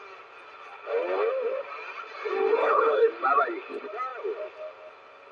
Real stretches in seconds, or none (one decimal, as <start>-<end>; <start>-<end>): 0.0-2.6; 3.1-5.3